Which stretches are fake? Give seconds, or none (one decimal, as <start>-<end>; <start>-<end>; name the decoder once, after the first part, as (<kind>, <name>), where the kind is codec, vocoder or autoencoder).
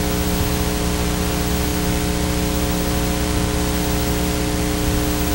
none